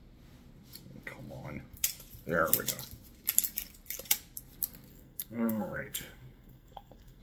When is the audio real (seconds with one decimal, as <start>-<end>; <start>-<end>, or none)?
0.0-4.9